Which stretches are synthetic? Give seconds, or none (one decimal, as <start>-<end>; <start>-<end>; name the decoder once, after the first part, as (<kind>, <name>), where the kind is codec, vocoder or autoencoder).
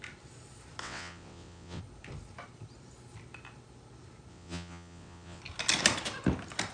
0.8-1.8 (vocoder, WaveNeXt); 4.3-5.4